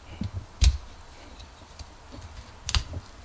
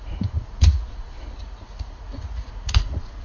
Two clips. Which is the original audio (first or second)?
first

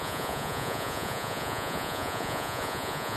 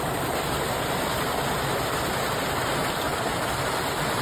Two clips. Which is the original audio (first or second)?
second